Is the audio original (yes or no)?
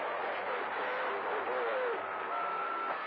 no